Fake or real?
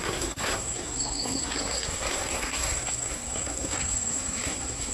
fake